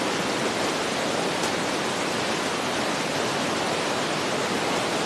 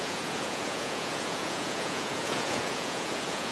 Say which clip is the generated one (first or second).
second